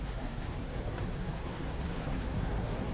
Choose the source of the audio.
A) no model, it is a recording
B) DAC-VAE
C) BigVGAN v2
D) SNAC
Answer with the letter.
D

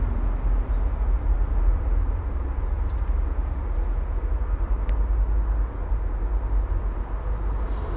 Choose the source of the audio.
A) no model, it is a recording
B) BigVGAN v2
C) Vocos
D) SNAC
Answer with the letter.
A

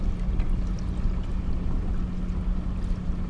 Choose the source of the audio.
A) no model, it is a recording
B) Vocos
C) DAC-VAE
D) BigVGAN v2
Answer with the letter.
A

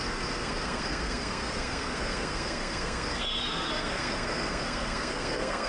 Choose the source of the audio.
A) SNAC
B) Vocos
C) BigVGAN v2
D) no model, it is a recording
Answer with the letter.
A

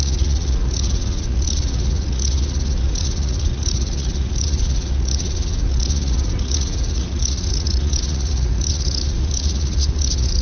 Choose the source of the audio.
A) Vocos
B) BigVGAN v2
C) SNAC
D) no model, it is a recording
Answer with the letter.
A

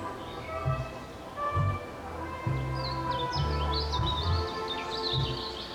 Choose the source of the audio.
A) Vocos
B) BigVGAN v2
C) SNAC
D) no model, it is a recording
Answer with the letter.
D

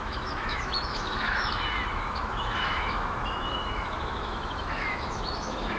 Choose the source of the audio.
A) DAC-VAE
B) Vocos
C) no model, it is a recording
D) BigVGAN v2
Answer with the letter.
A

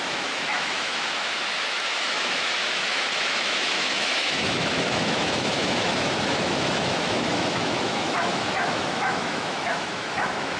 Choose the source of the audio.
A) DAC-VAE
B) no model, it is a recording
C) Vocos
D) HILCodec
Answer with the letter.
A